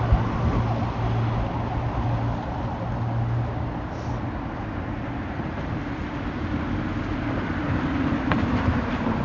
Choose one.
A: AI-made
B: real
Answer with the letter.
B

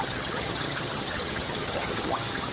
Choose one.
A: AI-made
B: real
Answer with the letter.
A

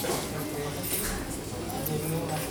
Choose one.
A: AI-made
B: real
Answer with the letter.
B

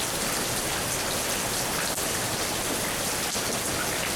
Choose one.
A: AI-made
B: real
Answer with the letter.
B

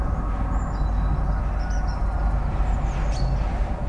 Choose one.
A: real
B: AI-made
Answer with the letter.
A